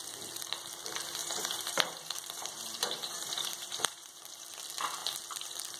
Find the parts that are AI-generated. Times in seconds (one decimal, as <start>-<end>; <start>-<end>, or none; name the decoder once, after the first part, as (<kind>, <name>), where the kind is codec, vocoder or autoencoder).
1.2-4.5 (vocoder, BigVGAN v2)